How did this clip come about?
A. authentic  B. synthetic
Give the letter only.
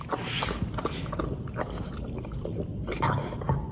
A